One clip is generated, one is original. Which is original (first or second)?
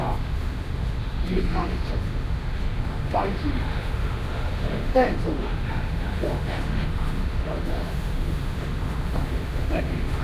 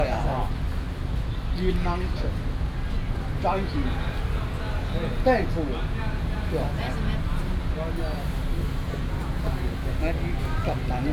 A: second